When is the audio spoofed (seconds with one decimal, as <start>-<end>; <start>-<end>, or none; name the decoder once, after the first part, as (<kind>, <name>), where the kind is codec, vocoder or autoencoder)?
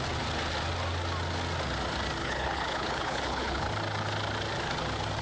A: 2.2-3.7 (codec, HILCodec)